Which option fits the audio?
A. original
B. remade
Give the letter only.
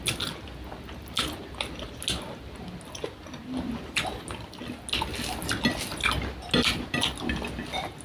A